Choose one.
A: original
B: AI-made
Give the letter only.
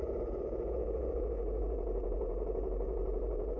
B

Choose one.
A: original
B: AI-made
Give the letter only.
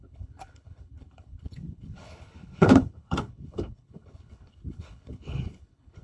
B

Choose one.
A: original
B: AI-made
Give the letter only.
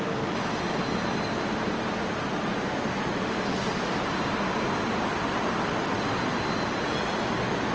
A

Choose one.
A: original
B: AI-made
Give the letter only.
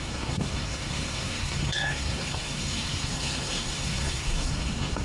B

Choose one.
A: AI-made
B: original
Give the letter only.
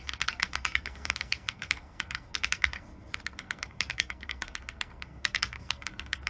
A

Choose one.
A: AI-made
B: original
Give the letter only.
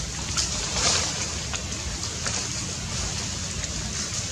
B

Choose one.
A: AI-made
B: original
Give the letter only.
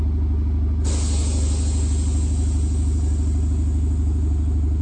B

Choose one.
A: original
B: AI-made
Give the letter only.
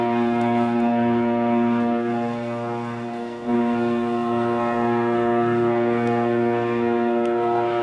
B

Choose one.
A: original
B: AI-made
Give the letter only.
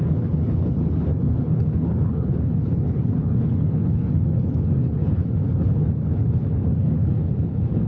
B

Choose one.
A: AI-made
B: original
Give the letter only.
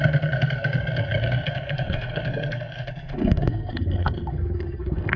A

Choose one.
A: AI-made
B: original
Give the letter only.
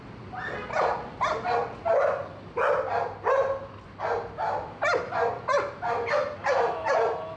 B